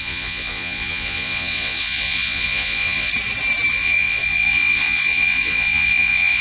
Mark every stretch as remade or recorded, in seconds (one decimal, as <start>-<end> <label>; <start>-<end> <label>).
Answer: 0.0-3.1 remade; 3.1-3.7 recorded; 3.7-6.4 remade

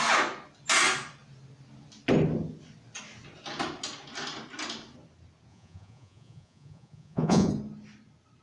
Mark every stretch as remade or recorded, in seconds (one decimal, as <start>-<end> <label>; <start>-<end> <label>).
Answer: 0.0-5.5 recorded; 5.5-7.5 remade; 7.5-8.4 recorded

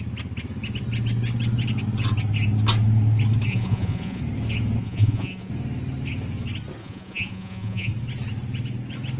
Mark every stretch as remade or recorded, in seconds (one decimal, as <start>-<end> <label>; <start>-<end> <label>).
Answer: 0.0-3.5 recorded; 3.5-4.2 remade; 4.2-4.8 recorded; 4.8-5.5 remade; 5.5-6.8 recorded; 6.8-7.9 remade; 7.9-9.2 recorded

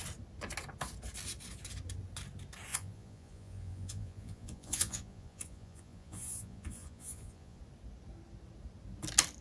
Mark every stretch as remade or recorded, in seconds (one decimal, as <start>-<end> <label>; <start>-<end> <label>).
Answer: 0.0-2.7 recorded; 2.7-7.6 remade; 7.6-9.4 recorded

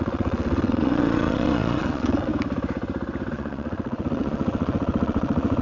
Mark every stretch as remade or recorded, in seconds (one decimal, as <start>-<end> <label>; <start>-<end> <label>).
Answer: 0.0-2.3 remade; 2.3-3.3 recorded; 3.3-5.6 remade